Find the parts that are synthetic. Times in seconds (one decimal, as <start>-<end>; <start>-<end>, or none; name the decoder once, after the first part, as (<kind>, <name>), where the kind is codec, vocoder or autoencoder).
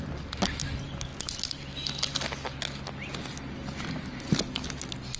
none